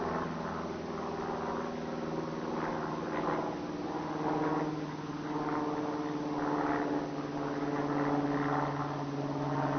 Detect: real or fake real